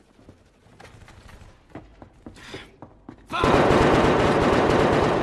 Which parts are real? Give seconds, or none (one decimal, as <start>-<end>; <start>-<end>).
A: 0.0-5.2